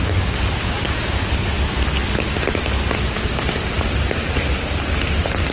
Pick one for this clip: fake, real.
real